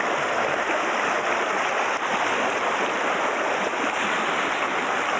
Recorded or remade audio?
recorded